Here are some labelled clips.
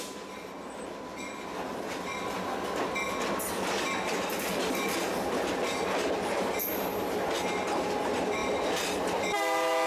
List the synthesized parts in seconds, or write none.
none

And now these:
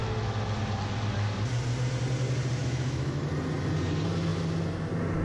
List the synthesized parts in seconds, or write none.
2.6-3.3 (autoencoder, DAC-VAE)

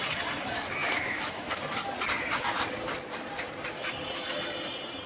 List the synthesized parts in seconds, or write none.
0.8-1.6 (autoencoder, DAC-VAE)

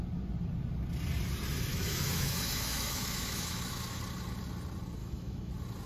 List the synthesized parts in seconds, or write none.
1.7-4.0 (autoencoder, DAC-VAE); 5.0-5.5